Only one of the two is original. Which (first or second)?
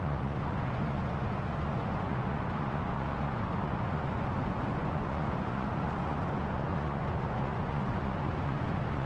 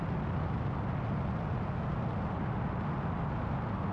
second